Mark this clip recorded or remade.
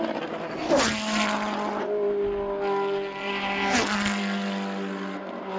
recorded